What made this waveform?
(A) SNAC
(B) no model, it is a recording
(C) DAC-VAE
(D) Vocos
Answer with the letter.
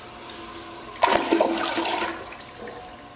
B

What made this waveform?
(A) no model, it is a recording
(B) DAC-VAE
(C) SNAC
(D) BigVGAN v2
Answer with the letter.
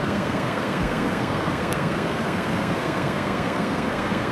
C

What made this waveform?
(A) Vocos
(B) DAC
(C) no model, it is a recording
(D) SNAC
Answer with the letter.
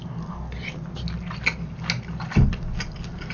C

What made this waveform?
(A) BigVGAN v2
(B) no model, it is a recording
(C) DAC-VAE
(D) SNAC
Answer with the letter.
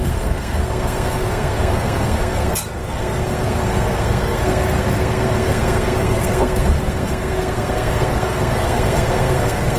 D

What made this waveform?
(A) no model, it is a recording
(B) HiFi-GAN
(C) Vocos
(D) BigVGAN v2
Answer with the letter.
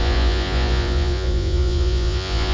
C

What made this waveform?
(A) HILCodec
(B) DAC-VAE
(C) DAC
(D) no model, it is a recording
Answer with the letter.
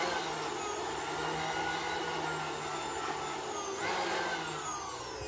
D